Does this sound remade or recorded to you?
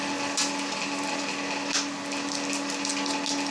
recorded